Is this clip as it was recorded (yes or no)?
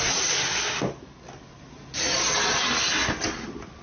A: yes